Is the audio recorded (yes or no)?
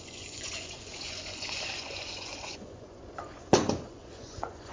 no